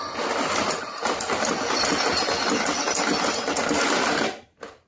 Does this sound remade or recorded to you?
recorded